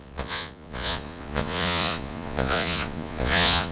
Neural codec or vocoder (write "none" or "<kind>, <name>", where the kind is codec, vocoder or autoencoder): vocoder, Vocos